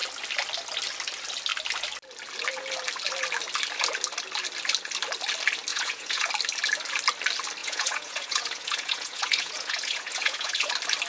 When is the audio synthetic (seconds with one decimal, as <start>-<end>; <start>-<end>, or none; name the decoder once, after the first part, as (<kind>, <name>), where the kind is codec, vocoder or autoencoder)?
5.7-6.3 (vocoder, Vocos); 7.6-10.7